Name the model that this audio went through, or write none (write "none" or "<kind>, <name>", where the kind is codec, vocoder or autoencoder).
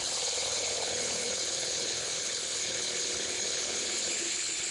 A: codec, HILCodec